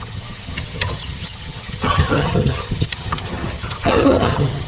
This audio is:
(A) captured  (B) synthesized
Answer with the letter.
B